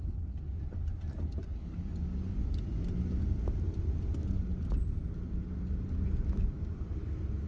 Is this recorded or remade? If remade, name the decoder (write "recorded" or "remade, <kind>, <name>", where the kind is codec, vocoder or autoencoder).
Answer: recorded